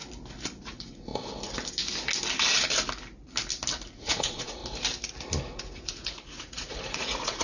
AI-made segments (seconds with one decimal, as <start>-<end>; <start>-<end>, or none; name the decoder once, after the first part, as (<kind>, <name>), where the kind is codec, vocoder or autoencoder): 0.6-1.1 (vocoder, Vocos); 3.9-4.6; 5.5-7.4